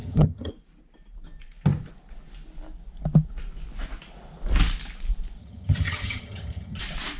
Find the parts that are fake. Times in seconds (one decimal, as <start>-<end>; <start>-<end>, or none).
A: 0.0-0.5; 5.4-6.8